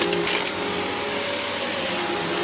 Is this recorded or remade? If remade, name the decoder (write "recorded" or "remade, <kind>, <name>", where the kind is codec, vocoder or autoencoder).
recorded